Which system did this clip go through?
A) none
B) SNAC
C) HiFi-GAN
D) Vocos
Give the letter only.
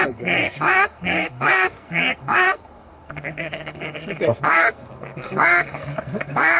B